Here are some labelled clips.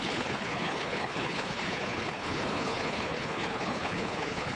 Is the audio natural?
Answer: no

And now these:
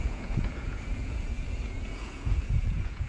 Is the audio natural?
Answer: no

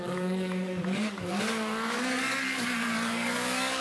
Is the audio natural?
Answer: no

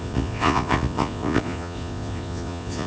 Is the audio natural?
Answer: no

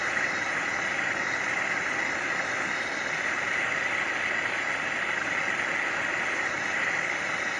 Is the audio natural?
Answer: yes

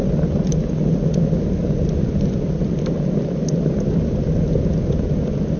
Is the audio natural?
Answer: yes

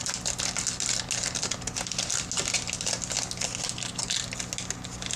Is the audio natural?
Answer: yes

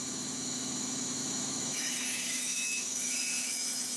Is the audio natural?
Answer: no